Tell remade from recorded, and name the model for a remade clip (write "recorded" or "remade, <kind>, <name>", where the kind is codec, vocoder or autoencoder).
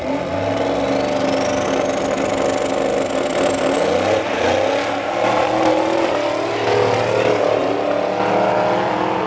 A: recorded